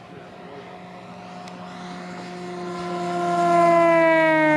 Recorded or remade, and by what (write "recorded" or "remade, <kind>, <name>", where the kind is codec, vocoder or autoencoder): recorded